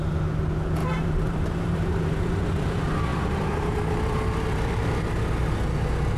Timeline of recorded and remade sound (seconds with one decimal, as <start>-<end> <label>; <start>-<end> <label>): 0.0-0.8 recorded; 0.8-2.3 remade; 2.3-3.1 recorded; 3.1-5.0 remade; 5.0-6.2 recorded